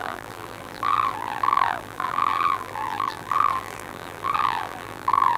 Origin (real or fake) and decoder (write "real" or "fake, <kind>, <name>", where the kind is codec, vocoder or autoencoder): fake, vocoder, BigVGAN v2